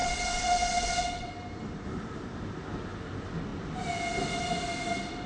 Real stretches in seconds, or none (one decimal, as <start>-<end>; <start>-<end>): 1.3-5.3